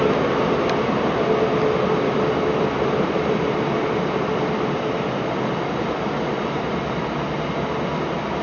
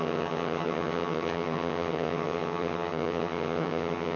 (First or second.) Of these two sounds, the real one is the first